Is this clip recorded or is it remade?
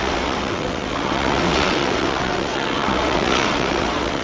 remade